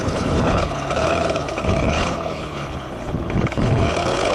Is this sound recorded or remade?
remade